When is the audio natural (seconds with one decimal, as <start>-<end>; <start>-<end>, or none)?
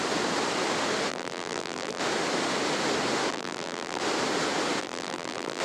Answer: 0.0-1.1; 2.0-3.3; 4.0-4.8